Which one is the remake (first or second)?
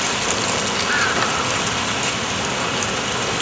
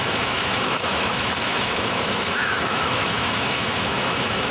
second